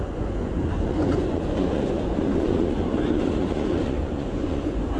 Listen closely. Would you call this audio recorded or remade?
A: remade